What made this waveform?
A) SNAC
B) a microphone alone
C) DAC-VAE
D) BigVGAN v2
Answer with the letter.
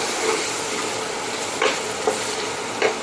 B